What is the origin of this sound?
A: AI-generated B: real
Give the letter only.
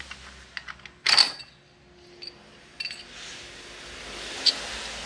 B